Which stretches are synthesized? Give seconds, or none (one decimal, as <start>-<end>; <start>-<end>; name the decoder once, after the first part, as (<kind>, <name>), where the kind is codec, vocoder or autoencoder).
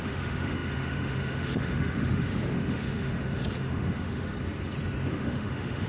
0.0-4.3 (autoencoder, DAC-VAE); 5.1-5.9